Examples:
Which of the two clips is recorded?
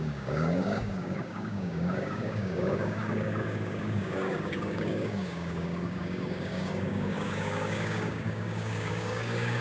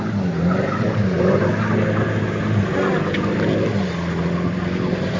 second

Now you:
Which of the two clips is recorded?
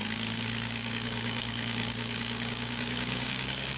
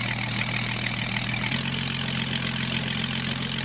second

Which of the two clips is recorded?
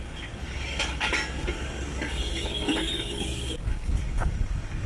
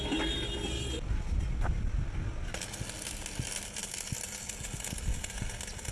second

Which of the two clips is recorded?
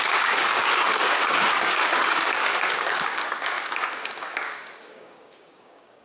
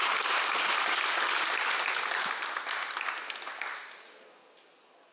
second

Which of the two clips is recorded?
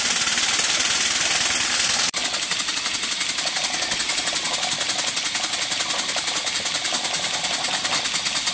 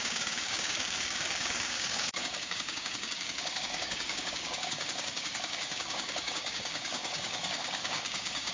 first